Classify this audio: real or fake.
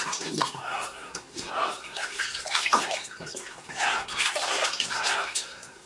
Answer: fake